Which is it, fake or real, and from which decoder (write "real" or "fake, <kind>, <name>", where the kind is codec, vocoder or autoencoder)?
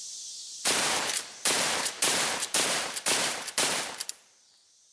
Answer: fake, vocoder, BigVGAN v2